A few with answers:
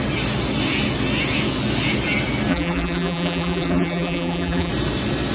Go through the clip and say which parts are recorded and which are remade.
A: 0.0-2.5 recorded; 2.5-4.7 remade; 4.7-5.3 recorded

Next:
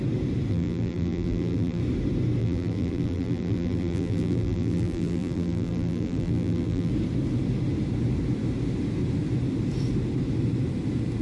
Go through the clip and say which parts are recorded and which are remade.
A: 0.0-0.5 recorded; 0.5-1.8 remade; 1.8-2.4 recorded; 2.4-6.9 remade; 6.9-11.2 recorded

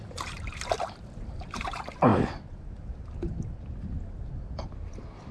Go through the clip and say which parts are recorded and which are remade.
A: 0.0-2.1 remade; 2.1-5.3 recorded

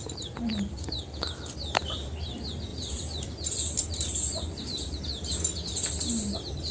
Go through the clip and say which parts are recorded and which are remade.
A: 0.0-0.5 remade; 0.5-2.7 recorded; 2.7-5.3 remade; 5.3-6.7 recorded

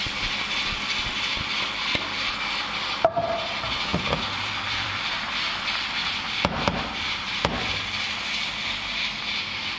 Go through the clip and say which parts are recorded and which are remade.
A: 0.0-3.9 recorded; 3.9-8.7 remade; 8.7-9.8 recorded

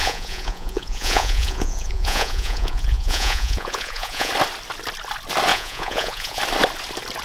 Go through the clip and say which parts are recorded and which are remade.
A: 0.0-4.3 remade; 4.3-5.5 recorded; 5.5-6.4 remade; 6.4-7.2 recorded

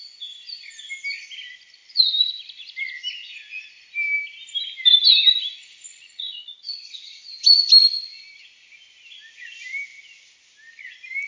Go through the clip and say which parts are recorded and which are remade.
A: 0.0-5.9 recorded; 5.9-7.2 remade; 7.2-11.3 recorded

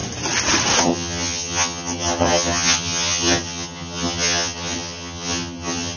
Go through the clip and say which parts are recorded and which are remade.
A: 0.0-0.8 recorded; 0.8-6.0 remade